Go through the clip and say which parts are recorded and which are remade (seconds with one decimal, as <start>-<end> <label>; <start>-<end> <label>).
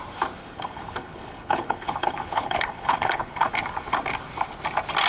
0.0-0.4 recorded; 0.4-3.5 remade; 3.5-5.1 recorded